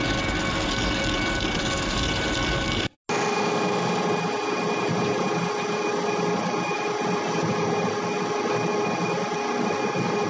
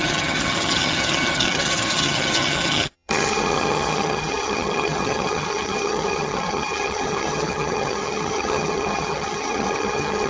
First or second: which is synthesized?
second